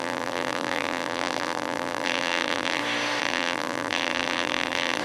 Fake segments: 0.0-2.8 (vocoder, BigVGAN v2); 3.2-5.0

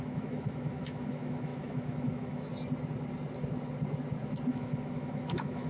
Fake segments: 0.0-2.5 (autoencoder, DAC-VAE); 4.5-5.7

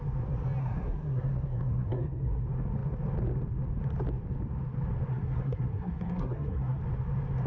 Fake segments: 0.6-2.4 (codec, SNAC); 5.1-6.8

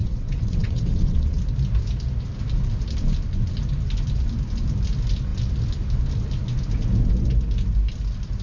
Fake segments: 0.0-1.4 (vocoder, WaveNeXt)

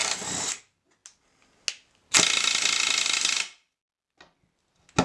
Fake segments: none

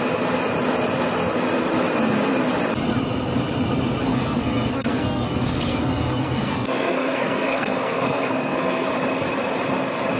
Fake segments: 4.1-8.9 (codec, SNAC)

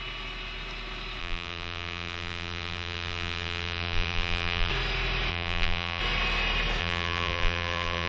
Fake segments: 1.2-4.7 (vocoder, BigVGAN v2); 5.3-6.0; 6.8-8.1

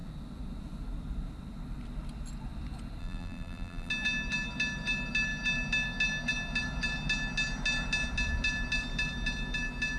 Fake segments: 3.0-3.9 (vocoder, BigVGAN v2)